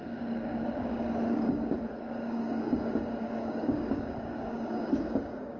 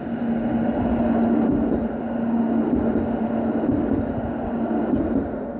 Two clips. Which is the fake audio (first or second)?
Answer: first